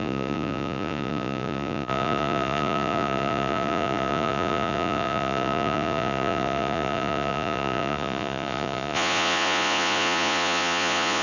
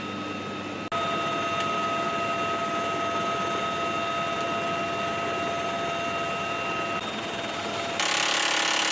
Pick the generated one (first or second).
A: first